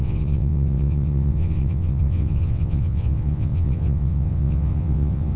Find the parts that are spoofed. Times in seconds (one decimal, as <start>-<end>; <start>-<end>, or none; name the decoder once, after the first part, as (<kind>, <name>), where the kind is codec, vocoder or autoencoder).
0.0-5.4 (vocoder, WaveNeXt)